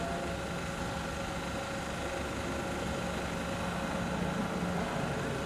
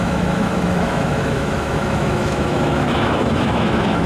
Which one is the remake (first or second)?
second